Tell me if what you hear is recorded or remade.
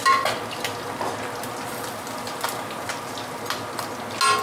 recorded